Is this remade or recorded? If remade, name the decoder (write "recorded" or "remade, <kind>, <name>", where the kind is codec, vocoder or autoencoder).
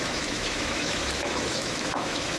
remade, autoencoder, DAC-VAE